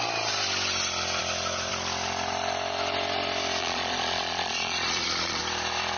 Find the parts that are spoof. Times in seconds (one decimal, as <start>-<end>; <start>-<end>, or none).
3.6-5.4

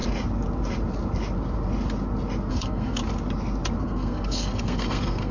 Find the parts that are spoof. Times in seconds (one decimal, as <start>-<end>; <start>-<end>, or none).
2.5-3.0; 3.8-5.3

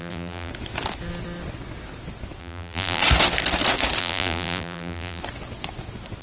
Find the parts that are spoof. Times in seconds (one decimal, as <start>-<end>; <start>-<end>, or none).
0.0-0.5; 2.4-3.0; 4.0-5.2

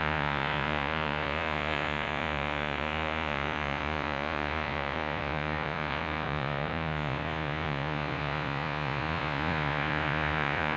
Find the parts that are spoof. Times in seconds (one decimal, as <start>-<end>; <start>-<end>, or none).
0.0-10.8